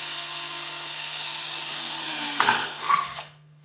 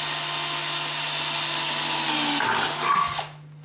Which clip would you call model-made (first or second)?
first